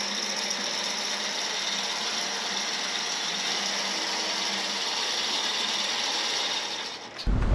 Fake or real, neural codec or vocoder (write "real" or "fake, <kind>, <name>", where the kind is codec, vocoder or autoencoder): real